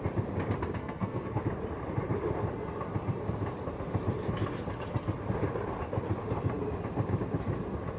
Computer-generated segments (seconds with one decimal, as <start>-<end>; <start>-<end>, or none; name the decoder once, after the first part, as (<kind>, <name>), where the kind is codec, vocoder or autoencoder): 0.8-1.4 (codec, SNAC)